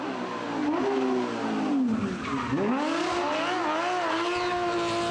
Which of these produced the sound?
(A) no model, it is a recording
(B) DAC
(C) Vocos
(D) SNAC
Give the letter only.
A